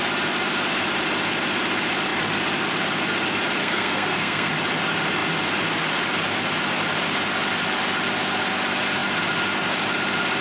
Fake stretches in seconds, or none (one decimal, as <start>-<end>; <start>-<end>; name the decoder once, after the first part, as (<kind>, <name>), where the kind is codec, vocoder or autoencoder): 3.6-4.5 (codec, SNAC)